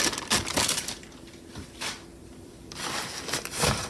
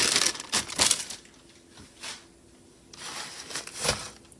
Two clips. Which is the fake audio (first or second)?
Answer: first